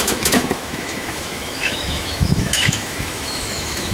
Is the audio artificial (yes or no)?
yes